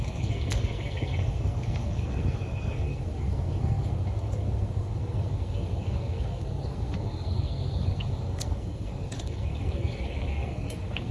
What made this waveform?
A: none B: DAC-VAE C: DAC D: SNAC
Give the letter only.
D